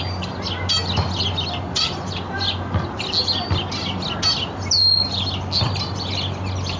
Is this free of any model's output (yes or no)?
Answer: yes